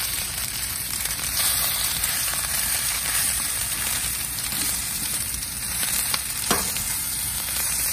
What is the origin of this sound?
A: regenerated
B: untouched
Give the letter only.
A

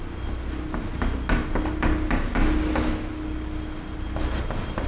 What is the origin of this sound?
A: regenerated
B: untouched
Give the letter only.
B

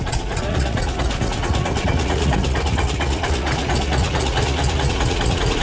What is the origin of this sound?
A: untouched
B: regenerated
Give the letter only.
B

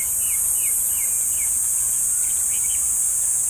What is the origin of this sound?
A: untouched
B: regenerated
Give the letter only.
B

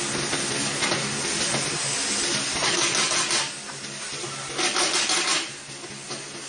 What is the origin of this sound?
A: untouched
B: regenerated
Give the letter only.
A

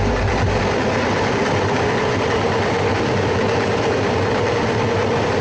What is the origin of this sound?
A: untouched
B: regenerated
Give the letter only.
A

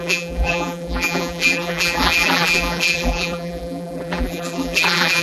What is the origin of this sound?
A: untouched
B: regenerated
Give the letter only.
B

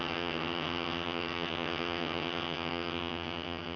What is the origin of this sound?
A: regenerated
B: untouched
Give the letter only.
A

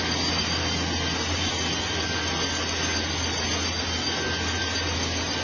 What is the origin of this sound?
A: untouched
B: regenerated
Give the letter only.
A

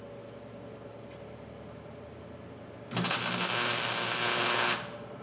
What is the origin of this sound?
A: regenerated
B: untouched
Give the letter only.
B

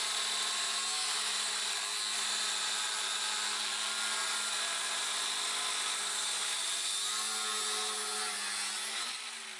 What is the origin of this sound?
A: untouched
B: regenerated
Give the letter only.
A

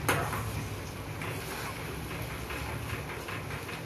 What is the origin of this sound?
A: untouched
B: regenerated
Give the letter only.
A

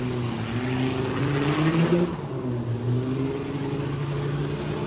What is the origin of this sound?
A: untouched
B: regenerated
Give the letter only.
A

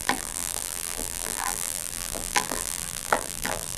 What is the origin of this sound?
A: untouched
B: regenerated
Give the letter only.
B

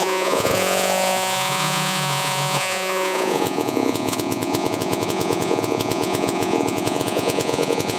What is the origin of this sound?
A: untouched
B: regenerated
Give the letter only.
B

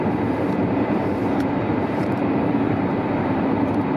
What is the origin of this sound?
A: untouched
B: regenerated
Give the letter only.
B